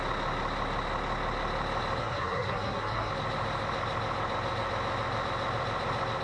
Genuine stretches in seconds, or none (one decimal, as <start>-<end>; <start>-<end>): 0.0-2.0; 3.1-6.2